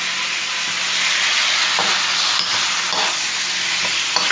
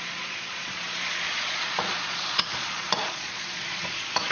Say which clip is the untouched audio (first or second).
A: first